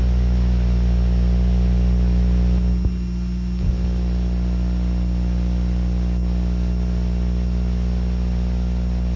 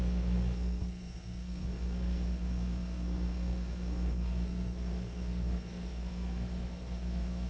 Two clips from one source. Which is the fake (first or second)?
second